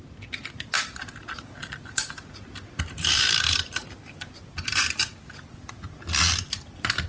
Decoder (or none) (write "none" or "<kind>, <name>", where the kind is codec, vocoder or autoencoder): none